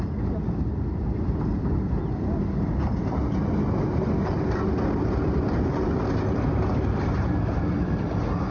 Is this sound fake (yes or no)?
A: no